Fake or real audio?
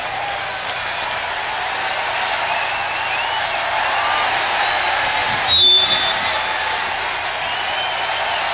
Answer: real